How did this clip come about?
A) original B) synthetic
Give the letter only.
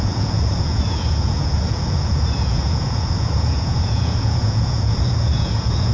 B